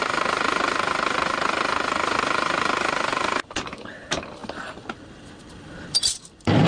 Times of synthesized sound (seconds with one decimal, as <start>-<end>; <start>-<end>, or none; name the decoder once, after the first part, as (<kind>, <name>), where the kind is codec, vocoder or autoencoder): 0.0-4.4 (vocoder, BigVGAN v2); 5.1-6.7